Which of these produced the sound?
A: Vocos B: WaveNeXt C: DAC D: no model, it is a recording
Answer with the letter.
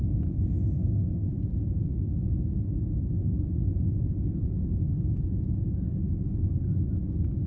D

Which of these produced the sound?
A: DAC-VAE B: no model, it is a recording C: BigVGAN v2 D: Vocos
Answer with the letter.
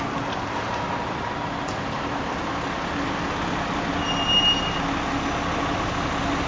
B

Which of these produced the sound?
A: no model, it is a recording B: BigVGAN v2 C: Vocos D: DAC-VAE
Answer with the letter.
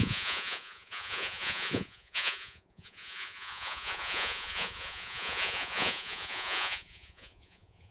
C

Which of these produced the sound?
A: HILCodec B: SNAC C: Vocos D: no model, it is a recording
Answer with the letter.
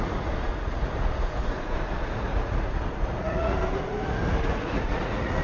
C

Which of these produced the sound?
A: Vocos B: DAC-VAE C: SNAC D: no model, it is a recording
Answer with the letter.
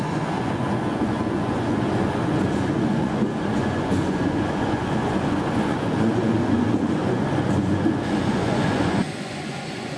A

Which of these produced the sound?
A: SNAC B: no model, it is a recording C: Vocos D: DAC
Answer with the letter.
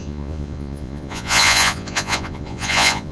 C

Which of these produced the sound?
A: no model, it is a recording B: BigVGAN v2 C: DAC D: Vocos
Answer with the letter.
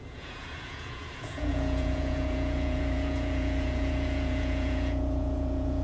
D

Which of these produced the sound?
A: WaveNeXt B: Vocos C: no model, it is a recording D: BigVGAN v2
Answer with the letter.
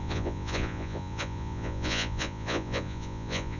B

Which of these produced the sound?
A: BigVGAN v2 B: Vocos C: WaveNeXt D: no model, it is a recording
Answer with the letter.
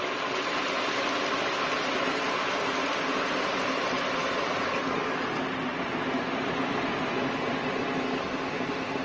D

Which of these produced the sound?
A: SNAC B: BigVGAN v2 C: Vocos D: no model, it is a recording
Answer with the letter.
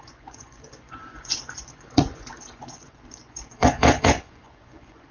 C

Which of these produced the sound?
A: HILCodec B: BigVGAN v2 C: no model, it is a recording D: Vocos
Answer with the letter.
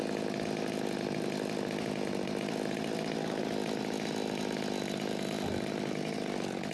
C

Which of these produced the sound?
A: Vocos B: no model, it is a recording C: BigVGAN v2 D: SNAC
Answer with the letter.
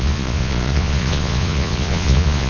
A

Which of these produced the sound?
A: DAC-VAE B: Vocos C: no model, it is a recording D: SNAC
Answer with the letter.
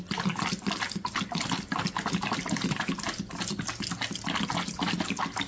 C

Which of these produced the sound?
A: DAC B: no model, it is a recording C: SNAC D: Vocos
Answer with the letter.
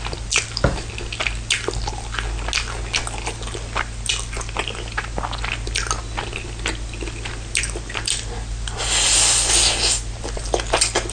B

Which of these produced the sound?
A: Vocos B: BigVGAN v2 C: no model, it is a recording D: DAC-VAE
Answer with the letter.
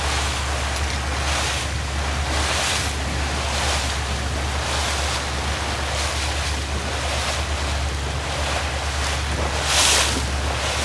C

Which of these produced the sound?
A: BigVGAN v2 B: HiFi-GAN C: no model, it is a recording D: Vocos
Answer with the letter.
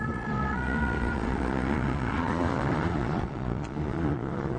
D